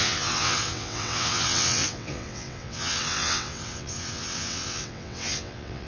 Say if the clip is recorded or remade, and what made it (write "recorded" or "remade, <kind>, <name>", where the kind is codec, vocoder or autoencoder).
remade, vocoder, WaveNeXt